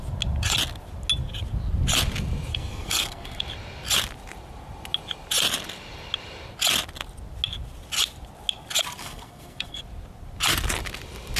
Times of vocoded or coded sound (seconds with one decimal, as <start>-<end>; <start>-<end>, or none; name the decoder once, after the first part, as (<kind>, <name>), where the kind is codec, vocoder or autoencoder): 2.5-3.4 (codec, SNAC); 9.0-9.8